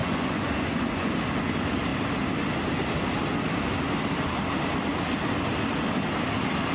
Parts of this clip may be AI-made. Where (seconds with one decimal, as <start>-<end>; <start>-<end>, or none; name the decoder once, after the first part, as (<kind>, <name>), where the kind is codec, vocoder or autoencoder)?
0.0-1.1 (vocoder, Vocos)